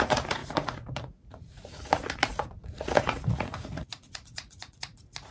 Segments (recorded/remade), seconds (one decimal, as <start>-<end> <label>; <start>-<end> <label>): 0.0-5.3 remade